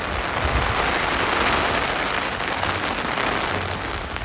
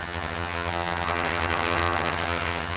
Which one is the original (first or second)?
first